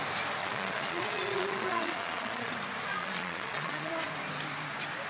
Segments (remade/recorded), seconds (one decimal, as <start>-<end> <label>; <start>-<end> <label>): 0.0-0.4 recorded; 0.4-2.5 remade; 2.5-2.9 recorded; 2.9-3.9 remade; 3.9-5.1 recorded